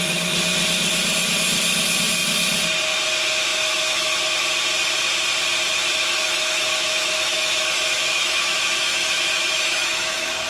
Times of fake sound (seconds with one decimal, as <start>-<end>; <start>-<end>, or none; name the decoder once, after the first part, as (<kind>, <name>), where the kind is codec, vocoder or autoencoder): 3.5-4.2 (autoencoder, DAC-VAE); 5.9-10.5